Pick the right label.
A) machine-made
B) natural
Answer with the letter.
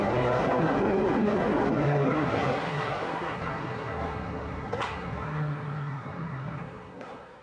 A